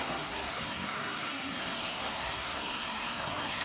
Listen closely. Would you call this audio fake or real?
fake